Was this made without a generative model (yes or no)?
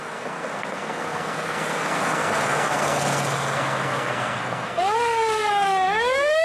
no